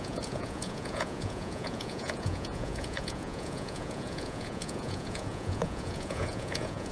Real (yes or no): no